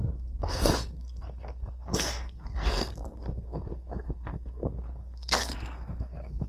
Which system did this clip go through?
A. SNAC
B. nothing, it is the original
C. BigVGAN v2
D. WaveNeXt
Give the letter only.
A